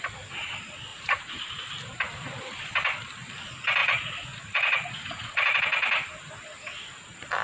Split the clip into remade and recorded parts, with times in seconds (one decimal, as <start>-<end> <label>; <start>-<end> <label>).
0.0-0.9 recorded; 0.9-1.5 remade; 1.5-3.8 recorded; 3.8-5.6 remade; 5.6-7.4 recorded